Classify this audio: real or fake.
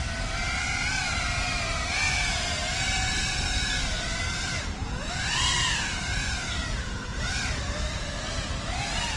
fake